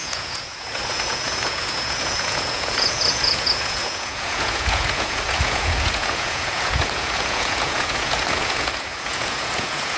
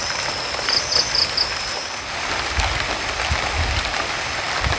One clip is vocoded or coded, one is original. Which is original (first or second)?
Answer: second